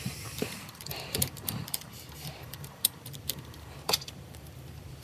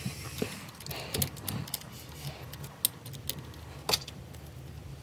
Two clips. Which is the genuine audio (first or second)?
second